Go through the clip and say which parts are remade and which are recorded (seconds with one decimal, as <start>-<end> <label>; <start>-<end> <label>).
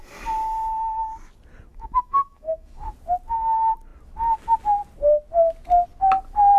0.0-1.7 recorded; 1.7-2.8 remade; 2.8-6.6 recorded